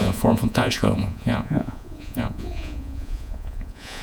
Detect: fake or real fake